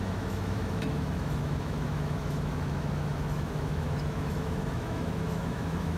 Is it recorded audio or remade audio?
remade